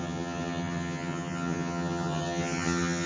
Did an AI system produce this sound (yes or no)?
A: yes